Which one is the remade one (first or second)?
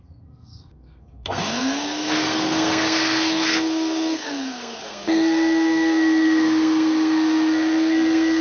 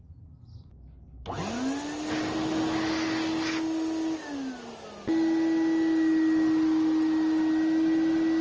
first